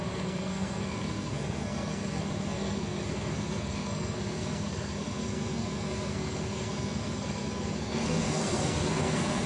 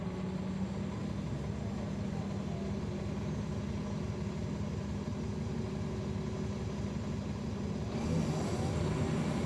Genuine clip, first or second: second